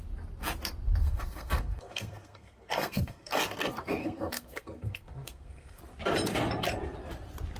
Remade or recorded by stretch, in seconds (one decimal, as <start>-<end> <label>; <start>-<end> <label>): 0.0-1.0 recorded; 1.0-3.4 remade; 3.4-4.0 recorded; 4.0-5.8 remade; 5.8-7.6 recorded